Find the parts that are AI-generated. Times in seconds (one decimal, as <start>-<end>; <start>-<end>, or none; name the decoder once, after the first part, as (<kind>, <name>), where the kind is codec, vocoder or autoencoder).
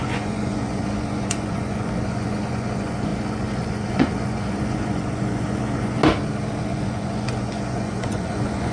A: 0.0-6.0 (vocoder, Vocos); 6.6-8.7